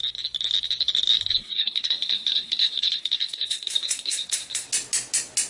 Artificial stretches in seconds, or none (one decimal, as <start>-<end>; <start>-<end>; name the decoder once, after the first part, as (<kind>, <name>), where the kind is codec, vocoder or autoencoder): 1.4-4.7 (codec, SNAC)